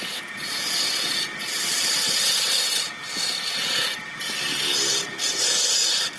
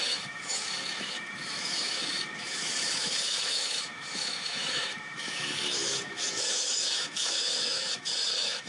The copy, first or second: second